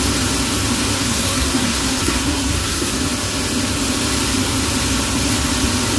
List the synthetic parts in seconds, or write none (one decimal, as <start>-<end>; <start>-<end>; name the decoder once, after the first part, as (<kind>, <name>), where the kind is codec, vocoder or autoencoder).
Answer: 1.0-2.9 (codec, SNAC)